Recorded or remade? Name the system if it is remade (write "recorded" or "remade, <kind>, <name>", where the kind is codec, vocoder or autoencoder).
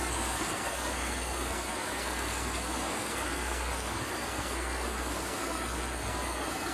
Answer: remade, codec, SNAC